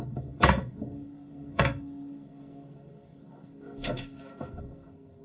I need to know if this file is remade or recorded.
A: remade